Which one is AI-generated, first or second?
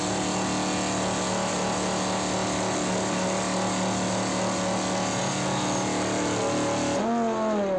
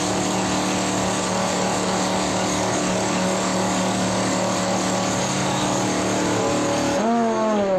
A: second